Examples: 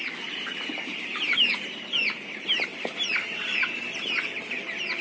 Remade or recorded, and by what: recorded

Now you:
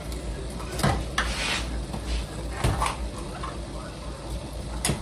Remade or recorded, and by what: recorded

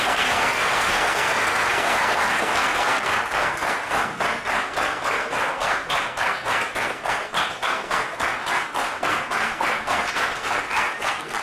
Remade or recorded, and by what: remade, codec, SNAC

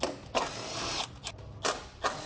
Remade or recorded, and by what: recorded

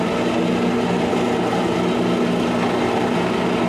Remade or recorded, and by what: recorded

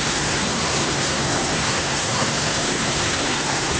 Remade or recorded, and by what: remade, codec, SNAC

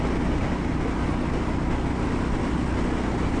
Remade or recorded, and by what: recorded